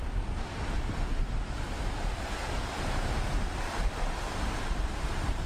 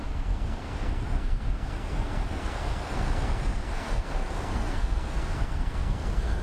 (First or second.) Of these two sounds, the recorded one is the first